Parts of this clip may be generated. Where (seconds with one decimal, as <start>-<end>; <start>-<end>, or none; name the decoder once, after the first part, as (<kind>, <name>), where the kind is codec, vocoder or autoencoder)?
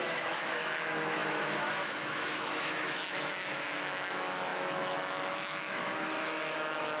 0.0-7.0 (autoencoder, DAC-VAE)